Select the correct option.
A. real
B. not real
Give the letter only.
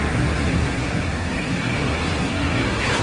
B